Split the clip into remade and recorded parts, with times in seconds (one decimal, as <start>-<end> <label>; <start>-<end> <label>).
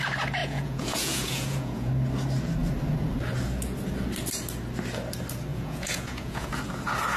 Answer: 0.0-0.4 recorded; 0.4-1.9 remade; 1.9-5.5 recorded; 5.5-6.5 remade; 6.5-7.2 recorded